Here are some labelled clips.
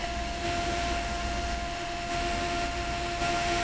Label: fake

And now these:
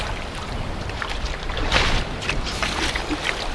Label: fake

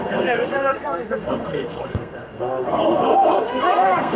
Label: fake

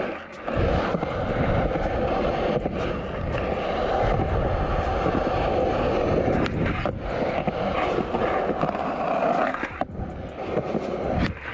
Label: real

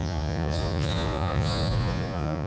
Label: fake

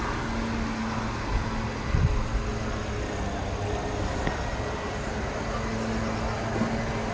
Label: real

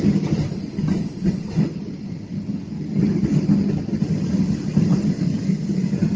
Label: real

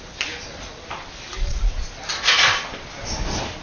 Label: real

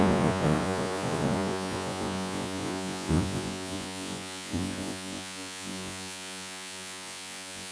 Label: fake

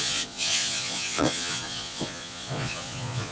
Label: fake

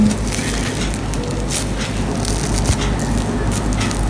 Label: real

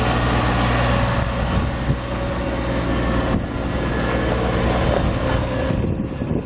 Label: real